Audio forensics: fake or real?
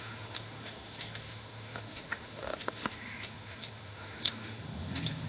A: fake